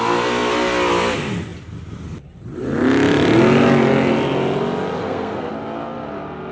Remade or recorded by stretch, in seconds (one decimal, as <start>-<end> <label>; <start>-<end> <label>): 0.0-5.0 recorded; 5.0-5.5 remade; 5.5-6.5 recorded